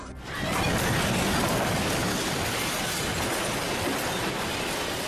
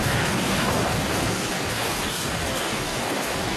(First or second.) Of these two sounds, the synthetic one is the second